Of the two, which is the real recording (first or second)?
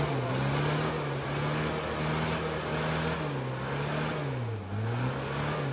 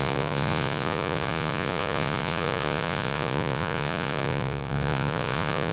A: first